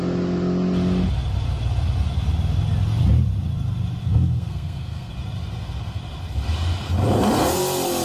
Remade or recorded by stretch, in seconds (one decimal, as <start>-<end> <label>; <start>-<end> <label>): 0.0-4.0 recorded; 4.0-5.1 remade; 5.1-8.0 recorded